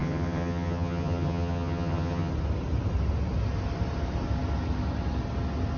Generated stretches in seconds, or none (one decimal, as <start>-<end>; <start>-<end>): 0.0-2.3